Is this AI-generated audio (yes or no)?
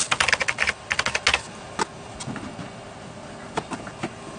no